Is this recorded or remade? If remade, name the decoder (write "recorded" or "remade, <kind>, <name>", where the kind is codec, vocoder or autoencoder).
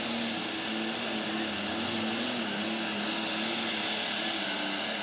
recorded